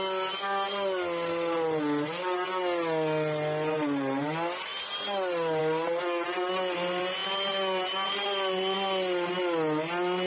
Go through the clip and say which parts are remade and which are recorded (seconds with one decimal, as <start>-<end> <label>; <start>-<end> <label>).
0.0-10.3 recorded